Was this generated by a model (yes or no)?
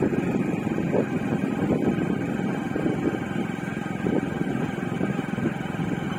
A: no